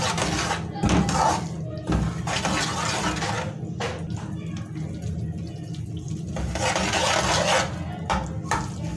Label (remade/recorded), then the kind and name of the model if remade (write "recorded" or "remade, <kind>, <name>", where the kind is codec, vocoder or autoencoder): recorded